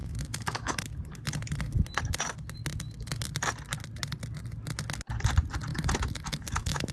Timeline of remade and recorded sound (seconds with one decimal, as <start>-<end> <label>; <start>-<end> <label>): 0.0-0.8 remade; 0.8-5.7 recorded; 5.7-6.9 remade

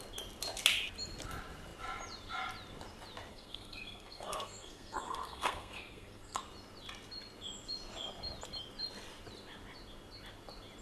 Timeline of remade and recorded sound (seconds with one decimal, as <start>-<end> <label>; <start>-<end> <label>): 0.0-3.3 recorded; 3.3-6.4 remade; 6.4-10.8 recorded

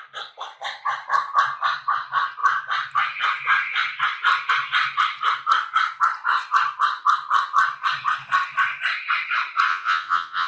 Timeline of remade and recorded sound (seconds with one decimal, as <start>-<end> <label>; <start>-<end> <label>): 0.0-9.7 recorded; 9.7-10.5 remade